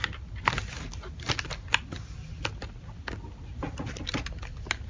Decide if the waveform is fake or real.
real